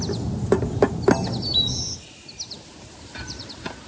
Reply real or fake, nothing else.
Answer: real